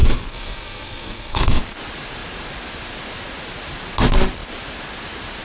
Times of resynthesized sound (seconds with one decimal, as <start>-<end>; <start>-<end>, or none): 0.0-1.6